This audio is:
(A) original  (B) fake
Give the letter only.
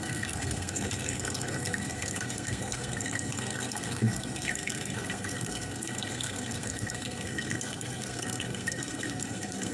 B